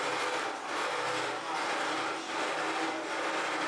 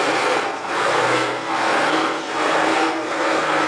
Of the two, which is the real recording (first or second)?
first